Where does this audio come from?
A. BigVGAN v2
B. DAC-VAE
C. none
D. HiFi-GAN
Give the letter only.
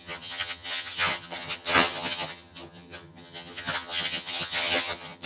D